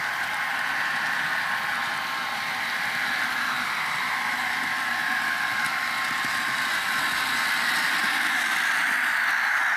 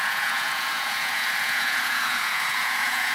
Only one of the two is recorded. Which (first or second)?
first